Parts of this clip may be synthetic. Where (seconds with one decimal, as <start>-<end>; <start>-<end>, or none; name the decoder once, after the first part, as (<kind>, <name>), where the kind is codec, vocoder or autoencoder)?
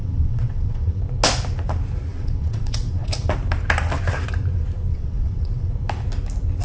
0.0-1.0 (vocoder, WaveNeXt); 2.1-3.1; 4.9-5.7